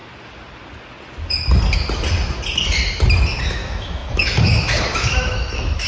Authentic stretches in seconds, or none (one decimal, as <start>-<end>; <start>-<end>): 0.0-3.5